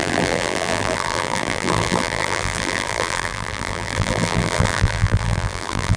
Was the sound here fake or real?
fake